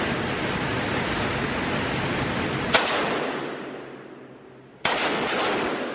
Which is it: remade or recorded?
recorded